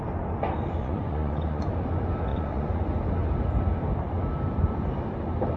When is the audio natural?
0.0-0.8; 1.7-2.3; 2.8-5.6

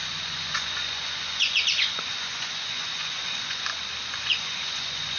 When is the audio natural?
3.7-4.2

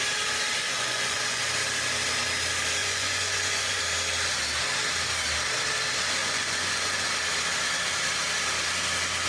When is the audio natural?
0.0-0.6; 1.4-2.8; 3.8-6.2; 7.1-9.3

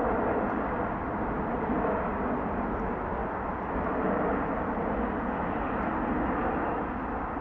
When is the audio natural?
0.0-7.4

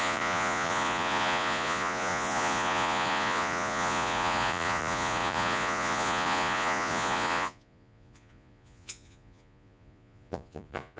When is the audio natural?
none

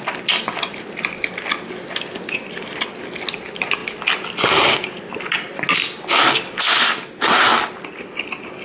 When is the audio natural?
0.0-8.6